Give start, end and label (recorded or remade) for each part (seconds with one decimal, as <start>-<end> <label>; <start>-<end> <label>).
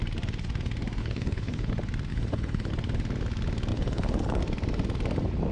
0.0-1.0 recorded; 1.0-1.7 remade; 1.7-2.1 recorded; 2.1-2.7 remade; 2.7-3.7 recorded; 3.7-4.4 remade; 4.4-5.5 recorded